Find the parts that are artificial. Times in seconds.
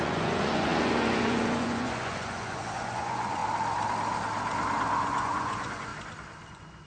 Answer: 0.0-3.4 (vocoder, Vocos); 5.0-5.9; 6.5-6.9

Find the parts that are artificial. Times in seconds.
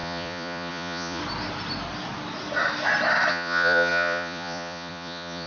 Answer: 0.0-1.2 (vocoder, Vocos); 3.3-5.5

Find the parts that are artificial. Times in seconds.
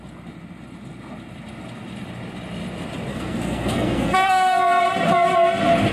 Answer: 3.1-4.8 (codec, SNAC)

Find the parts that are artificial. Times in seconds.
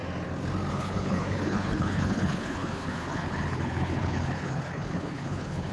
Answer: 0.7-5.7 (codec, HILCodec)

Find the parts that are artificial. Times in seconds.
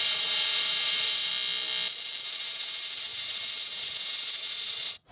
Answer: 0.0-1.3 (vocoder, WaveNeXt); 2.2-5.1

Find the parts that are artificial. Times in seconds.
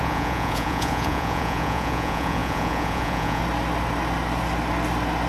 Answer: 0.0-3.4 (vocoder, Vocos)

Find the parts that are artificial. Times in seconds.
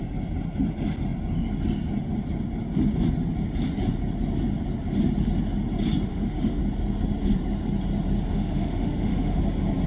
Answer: 6.1-6.6 (autoencoder, DAC-VAE); 8.3-9.4